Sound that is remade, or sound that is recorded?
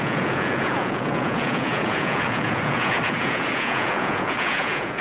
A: remade